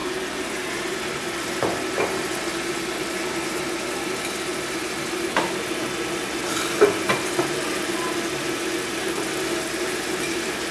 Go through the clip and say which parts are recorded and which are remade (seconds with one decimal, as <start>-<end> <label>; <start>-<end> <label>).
0.0-10.7 remade